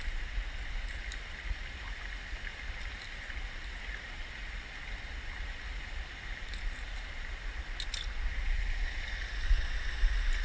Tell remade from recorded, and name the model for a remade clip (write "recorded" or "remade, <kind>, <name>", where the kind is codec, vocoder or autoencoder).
recorded